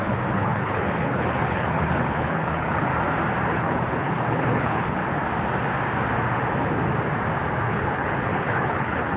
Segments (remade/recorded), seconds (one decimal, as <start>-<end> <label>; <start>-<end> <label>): 0.0-2.9 remade; 2.9-3.5 recorded; 3.5-5.0 remade; 5.0-7.7 recorded; 7.7-9.2 remade

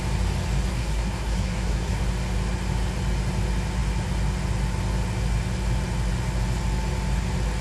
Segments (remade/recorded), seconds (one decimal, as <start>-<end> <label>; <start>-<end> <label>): 0.0-0.7 recorded; 0.7-2.0 remade; 2.0-7.6 recorded

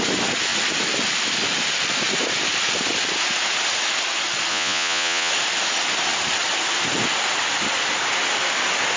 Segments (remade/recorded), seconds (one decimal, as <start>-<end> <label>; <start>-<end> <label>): 0.0-4.5 recorded; 4.5-5.3 remade; 5.3-9.0 recorded

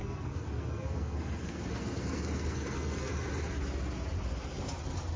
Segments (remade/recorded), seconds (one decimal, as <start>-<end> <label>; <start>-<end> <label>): 0.0-3.1 remade; 3.1-5.2 recorded

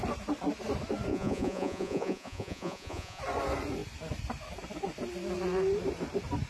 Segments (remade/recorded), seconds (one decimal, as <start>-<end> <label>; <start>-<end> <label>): 0.0-1.1 recorded; 1.1-3.2 remade; 3.2-6.5 recorded

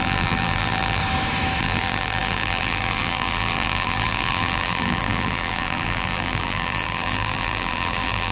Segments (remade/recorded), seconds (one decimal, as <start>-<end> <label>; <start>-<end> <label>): 0.0-1.0 remade; 1.0-1.6 recorded; 1.6-8.3 remade

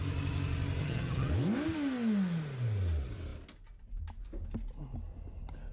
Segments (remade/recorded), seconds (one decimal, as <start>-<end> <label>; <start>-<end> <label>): 0.0-0.8 recorded; 0.8-1.3 remade; 1.3-5.7 recorded